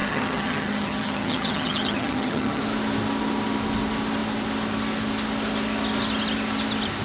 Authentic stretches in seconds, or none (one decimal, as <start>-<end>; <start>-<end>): 2.6-7.0